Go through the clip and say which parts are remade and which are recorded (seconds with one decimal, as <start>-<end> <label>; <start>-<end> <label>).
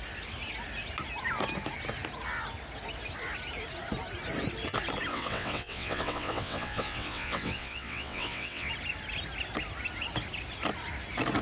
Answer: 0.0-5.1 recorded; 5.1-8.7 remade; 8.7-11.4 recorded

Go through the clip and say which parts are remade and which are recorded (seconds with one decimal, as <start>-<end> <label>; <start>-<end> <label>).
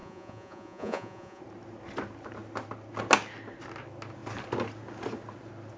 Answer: 0.0-1.4 remade; 1.4-5.8 recorded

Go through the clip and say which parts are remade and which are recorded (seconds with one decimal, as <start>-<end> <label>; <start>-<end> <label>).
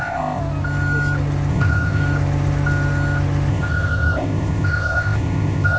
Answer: 0.0-0.4 remade; 0.4-1.5 recorded; 1.5-2.0 remade; 2.0-3.5 recorded; 3.5-5.8 remade